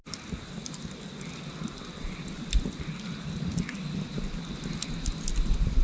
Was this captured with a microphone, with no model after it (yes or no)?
yes